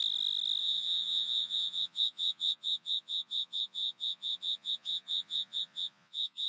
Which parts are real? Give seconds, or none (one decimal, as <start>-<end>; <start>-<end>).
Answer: 0.0-0.6